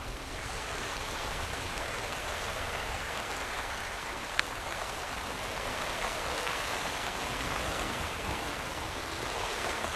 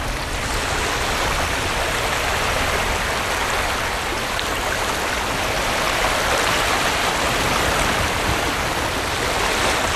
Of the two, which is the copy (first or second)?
first